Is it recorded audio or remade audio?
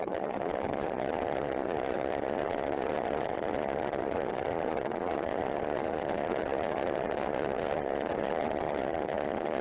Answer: remade